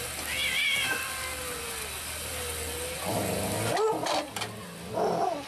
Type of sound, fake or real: real